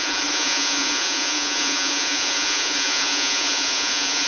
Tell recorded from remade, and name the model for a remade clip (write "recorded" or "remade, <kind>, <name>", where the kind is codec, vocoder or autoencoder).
remade, vocoder, Vocos